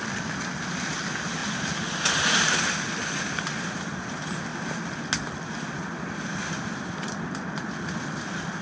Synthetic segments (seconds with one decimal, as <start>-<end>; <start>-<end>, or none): none